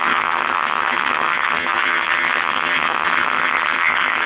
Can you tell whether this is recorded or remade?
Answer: remade